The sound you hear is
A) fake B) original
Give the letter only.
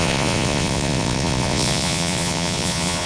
A